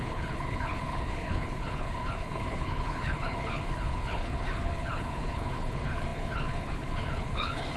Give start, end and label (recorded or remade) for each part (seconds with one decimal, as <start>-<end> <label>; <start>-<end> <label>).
0.0-7.8 remade